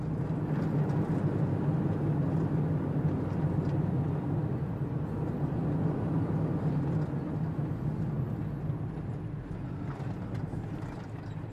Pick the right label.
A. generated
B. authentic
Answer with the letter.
B